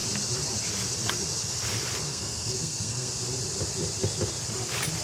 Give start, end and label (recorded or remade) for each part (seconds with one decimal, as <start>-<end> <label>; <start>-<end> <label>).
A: 0.0-2.1 recorded; 2.1-3.1 remade; 3.1-5.0 recorded